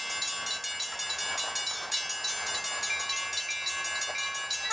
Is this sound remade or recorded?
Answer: recorded